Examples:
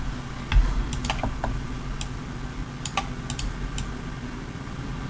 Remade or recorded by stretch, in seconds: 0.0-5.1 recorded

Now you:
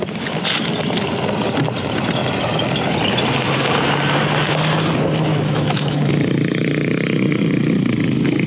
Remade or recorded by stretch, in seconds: 0.0-5.3 recorded; 5.3-6.1 remade; 6.1-8.5 recorded